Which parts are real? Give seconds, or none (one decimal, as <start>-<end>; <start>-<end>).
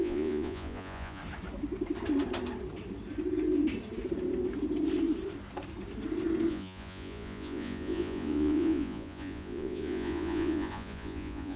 1.2-6.5